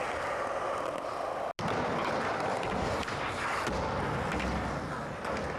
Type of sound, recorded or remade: recorded